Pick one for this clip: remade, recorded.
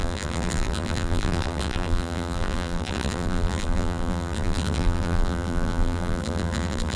remade